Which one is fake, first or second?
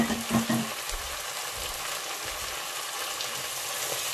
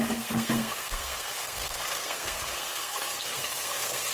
second